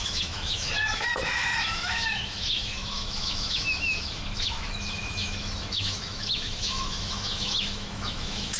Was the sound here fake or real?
fake